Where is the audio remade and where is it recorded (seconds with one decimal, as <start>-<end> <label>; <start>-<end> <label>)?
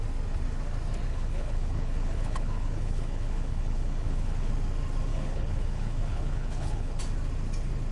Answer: 0.0-1.1 recorded; 1.1-4.5 remade; 4.5-5.1 recorded; 5.1-7.0 remade; 7.0-7.9 recorded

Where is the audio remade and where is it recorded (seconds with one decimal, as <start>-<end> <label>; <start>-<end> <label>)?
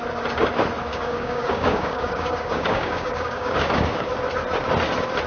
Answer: 0.0-0.9 recorded; 0.9-4.1 remade; 4.1-5.3 recorded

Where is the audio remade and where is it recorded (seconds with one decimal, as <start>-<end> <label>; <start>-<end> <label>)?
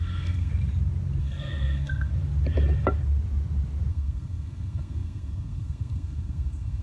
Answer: 0.0-0.5 remade; 0.5-1.2 recorded; 1.2-2.1 remade; 2.1-3.9 recorded; 3.9-6.8 remade